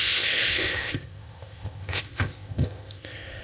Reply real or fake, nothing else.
fake